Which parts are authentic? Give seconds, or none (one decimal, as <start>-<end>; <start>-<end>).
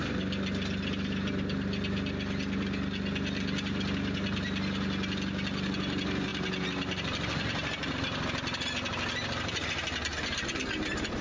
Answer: 0.0-11.2